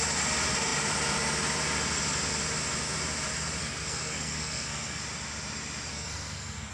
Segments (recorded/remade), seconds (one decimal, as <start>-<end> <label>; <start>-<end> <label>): 0.0-3.6 recorded; 3.6-5.0 remade; 5.0-5.9 recorded; 5.9-6.7 remade